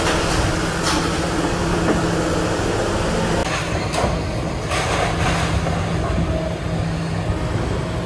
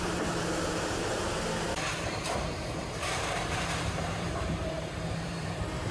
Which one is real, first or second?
first